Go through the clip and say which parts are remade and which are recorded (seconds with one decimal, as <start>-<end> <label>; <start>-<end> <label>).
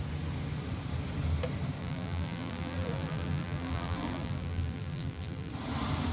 0.0-1.8 recorded; 1.8-5.5 remade; 5.5-6.1 recorded